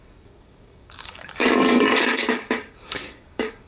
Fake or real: fake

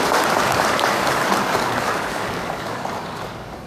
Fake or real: fake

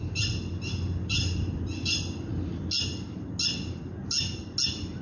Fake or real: real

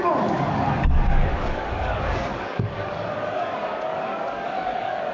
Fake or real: fake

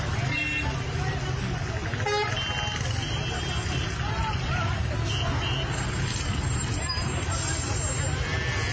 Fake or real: real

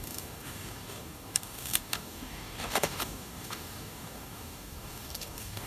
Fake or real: fake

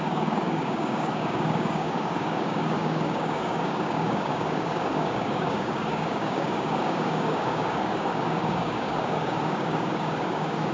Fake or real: fake